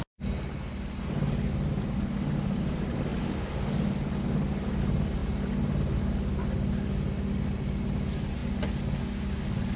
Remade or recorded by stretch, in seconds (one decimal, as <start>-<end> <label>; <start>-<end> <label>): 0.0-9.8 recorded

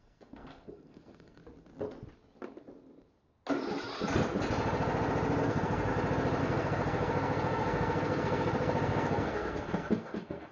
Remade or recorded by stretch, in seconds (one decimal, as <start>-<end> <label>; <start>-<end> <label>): 0.0-1.4 remade; 1.4-5.4 recorded; 5.4-5.9 remade; 5.9-6.4 recorded; 6.4-10.5 remade

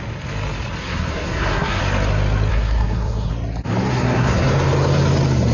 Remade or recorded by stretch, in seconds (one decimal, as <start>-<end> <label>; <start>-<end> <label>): 0.0-0.8 recorded; 0.8-1.8 remade; 1.8-2.5 recorded; 2.5-3.3 remade; 3.3-3.9 recorded; 3.9-4.5 remade; 4.5-5.5 recorded